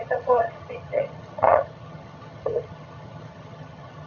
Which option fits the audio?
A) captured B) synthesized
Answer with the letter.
B